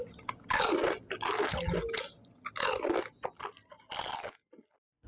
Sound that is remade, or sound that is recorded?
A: recorded